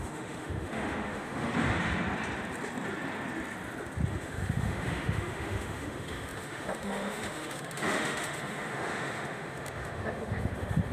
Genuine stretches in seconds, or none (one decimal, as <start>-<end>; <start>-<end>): 1.5-4.1